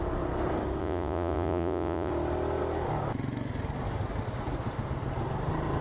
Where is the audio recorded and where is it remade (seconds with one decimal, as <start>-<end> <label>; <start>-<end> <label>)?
0.0-0.8 recorded; 0.8-2.1 remade; 2.1-5.8 recorded